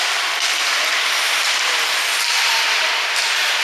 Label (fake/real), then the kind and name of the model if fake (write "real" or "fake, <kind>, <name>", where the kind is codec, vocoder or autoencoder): real